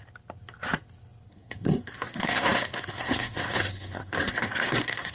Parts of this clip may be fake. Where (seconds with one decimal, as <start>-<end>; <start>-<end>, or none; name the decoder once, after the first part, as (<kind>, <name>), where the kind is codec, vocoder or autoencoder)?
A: 1.3-5.1 (codec, SNAC)

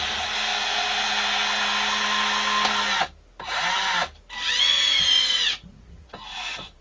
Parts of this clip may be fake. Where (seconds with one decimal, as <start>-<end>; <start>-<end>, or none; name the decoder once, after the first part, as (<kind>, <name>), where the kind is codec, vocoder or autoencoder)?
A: 0.0-0.5 (vocoder, Vocos); 4.6-6.8

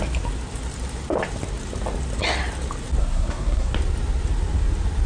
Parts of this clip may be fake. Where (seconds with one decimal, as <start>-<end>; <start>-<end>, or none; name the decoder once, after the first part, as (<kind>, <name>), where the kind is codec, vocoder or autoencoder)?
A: 3.0-3.7 (codec, SNAC)

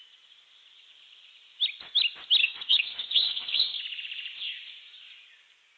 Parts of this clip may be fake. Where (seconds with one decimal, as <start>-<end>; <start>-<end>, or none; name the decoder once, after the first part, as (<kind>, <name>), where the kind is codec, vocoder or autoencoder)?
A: 2.4-3.8 (codec, SNAC)

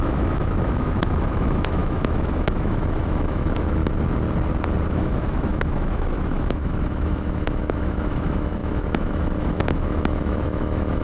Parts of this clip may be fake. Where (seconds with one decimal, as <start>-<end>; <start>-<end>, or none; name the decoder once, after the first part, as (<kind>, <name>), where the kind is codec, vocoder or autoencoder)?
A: 0.0-3.8 (autoencoder, DAC-VAE); 4.9-11.0